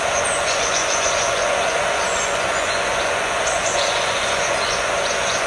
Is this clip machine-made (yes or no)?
yes